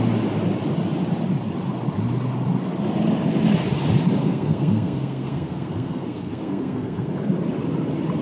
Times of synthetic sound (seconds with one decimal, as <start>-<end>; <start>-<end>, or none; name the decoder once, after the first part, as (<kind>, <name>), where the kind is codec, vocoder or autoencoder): 4.2-7.1 (codec, SNAC)